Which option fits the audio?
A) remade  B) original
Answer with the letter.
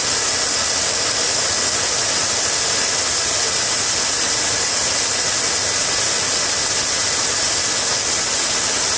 B